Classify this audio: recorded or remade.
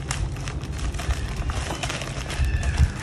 recorded